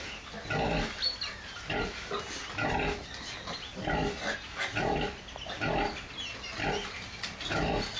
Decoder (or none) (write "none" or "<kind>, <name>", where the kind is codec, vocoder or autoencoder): none